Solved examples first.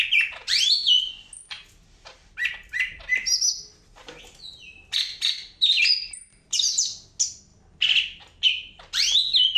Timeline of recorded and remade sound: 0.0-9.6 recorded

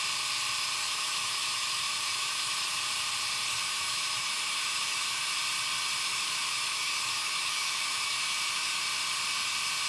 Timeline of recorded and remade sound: 0.0-0.8 recorded; 0.8-2.8 remade; 2.8-3.5 recorded; 3.5-5.4 remade; 5.4-6.0 recorded; 6.0-8.8 remade; 8.8-9.9 recorded